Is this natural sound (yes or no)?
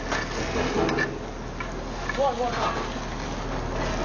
yes